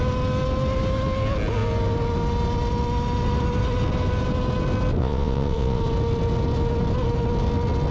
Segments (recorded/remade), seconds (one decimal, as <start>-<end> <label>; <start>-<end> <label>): 0.0-5.0 recorded; 5.0-5.8 remade; 5.8-7.9 recorded